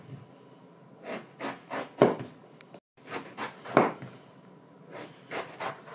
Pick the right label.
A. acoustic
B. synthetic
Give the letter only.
A